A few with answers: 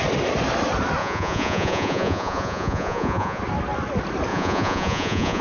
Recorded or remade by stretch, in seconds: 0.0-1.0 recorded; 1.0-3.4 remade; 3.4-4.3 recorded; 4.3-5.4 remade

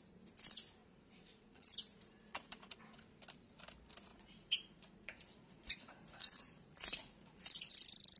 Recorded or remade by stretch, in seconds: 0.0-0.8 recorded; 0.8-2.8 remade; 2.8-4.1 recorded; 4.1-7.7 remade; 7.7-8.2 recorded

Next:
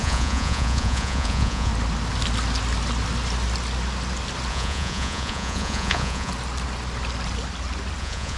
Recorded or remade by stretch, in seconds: 0.0-1.7 remade; 1.7-4.5 recorded; 4.5-6.3 remade; 6.3-8.0 recorded; 8.0-8.4 remade

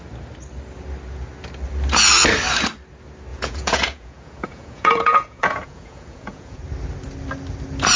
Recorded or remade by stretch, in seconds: 0.0-3.3 recorded; 3.3-6.6 remade; 6.6-8.0 recorded

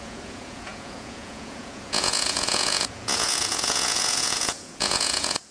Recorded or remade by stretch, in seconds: 0.0-5.5 remade

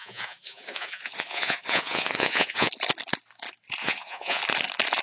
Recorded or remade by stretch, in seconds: 0.0-2.7 remade; 2.7-3.8 recorded; 3.8-4.4 remade; 4.4-5.0 recorded

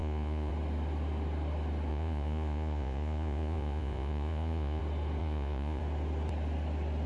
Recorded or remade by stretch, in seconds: 0.0-0.5 remade; 0.5-1.9 recorded; 1.9-4.8 remade; 4.8-5.2 recorded; 5.2-5.8 remade; 5.8-7.1 recorded